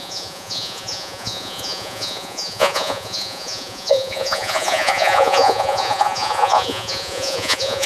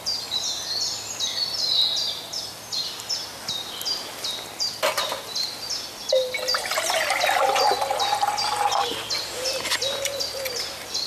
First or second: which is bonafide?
second